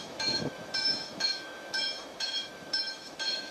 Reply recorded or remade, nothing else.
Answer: remade